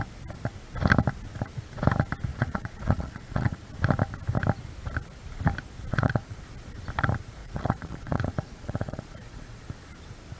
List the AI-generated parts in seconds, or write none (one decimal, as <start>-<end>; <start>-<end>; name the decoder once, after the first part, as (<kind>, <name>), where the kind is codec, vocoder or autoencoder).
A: 2.3-3.7 (vocoder, Vocos); 5.9-6.4; 7.4-9.6